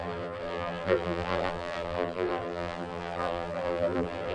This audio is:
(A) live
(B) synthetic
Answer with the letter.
B